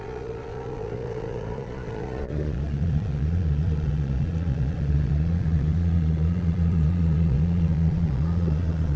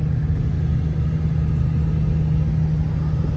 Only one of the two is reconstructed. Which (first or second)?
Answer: first